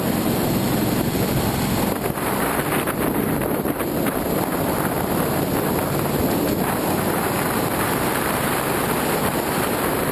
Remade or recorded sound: remade